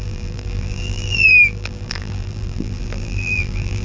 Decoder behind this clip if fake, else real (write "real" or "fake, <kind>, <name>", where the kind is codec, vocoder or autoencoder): fake, vocoder, BigVGAN v2